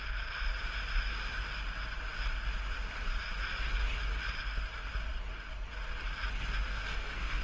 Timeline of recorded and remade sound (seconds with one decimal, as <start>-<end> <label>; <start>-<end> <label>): 0.0-6.7 recorded; 6.7-7.4 remade